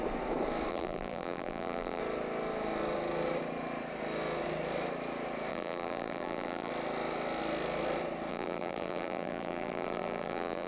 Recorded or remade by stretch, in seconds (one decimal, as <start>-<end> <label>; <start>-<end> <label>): 0.0-0.7 recorded; 0.7-2.0 remade; 2.0-5.5 recorded; 5.5-6.7 remade; 6.7-8.3 recorded; 8.3-10.7 remade